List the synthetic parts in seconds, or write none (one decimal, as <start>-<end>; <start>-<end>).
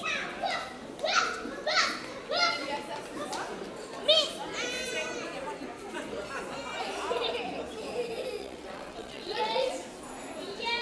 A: 8.4-9.7